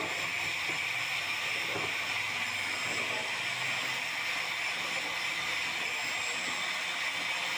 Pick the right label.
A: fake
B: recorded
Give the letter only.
B